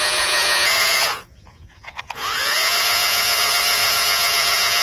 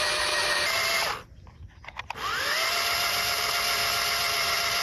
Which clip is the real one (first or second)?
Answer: second